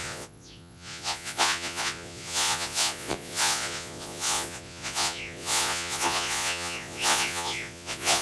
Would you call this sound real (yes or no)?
no